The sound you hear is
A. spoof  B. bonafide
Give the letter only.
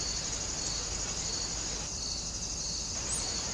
B